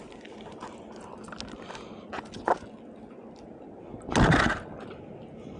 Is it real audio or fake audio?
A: real